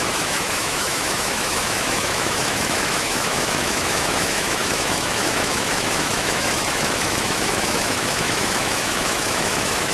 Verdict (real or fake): fake